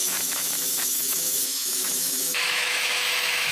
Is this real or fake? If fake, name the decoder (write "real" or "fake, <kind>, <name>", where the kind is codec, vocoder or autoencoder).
fake, autoencoder, DAC-VAE